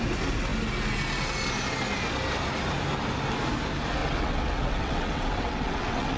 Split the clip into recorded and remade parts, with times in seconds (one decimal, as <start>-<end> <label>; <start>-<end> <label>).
0.0-4.0 recorded; 4.0-6.2 remade